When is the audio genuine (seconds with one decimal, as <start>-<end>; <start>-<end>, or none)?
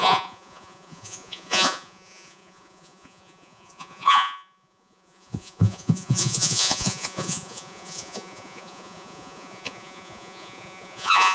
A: none